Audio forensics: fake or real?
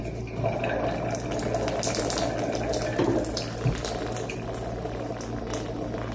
real